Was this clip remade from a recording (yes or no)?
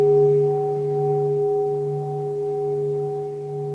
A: no